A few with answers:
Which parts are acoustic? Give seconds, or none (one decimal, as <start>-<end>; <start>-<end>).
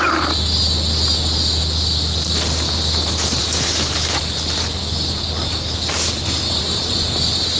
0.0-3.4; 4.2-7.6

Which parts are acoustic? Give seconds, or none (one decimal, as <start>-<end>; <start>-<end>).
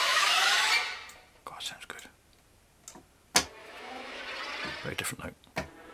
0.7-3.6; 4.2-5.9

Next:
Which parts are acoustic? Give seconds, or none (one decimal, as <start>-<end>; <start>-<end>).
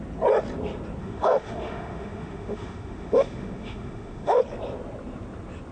0.0-1.0; 4.4-5.7